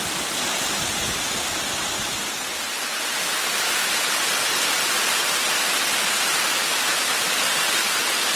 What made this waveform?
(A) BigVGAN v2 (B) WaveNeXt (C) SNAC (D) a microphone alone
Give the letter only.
D